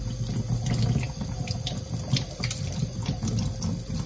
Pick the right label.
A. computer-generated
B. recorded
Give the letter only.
B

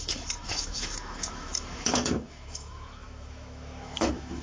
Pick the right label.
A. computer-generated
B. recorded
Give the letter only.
A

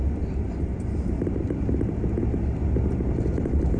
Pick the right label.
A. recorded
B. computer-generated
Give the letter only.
A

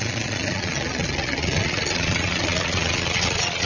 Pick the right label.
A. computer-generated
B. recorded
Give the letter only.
A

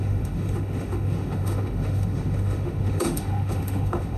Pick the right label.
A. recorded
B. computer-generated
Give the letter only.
B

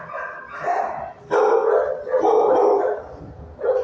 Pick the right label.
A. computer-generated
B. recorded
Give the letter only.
B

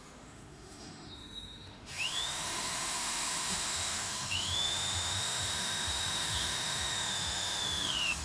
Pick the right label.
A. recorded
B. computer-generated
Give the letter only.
B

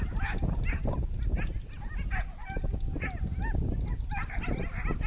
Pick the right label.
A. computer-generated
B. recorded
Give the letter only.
B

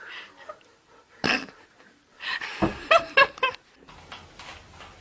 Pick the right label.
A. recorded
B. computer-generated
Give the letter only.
A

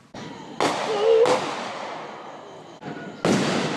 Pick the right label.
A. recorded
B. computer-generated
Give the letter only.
A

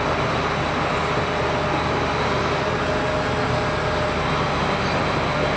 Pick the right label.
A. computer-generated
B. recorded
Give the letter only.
B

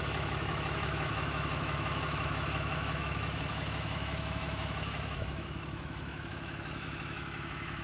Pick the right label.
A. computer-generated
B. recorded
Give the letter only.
A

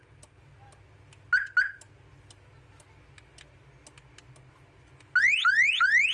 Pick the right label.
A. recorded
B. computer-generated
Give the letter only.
A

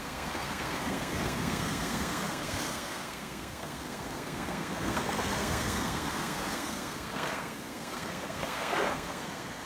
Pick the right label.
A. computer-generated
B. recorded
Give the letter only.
A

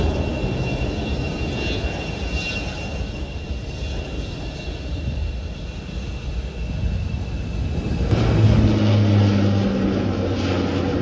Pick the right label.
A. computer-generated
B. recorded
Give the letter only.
B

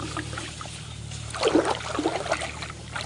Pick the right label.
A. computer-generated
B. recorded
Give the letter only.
B